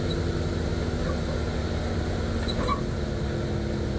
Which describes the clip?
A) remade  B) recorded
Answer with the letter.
B